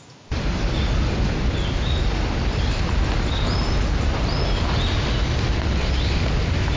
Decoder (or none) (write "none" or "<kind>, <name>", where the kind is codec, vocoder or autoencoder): none